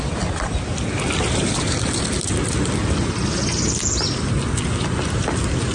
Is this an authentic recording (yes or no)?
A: yes